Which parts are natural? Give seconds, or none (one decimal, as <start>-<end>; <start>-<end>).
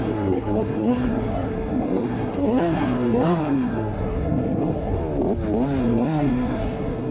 5.0-5.8